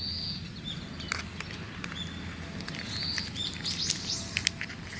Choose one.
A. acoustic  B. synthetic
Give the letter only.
A